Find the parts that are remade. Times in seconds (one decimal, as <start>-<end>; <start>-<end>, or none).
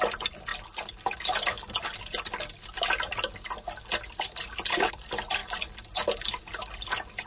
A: none